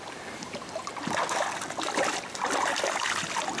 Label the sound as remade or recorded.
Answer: recorded